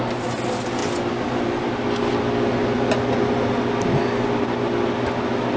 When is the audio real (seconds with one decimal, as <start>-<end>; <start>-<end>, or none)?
0.0-5.6